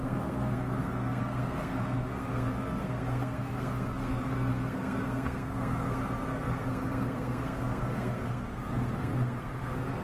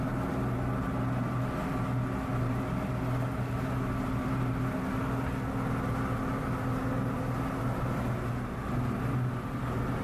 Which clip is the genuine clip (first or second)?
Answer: second